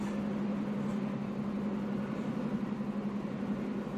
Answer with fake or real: real